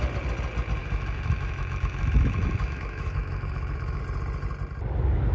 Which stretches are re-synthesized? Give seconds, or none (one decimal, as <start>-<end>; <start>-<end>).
0.8-4.0